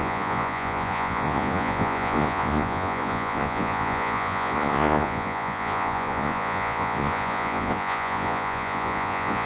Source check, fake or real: fake